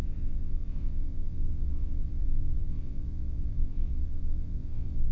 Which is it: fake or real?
fake